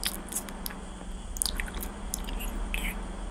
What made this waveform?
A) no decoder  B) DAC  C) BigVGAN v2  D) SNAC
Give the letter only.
A